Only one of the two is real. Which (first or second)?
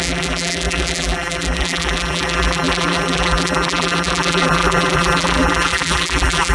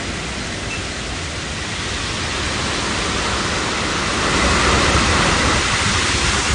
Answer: second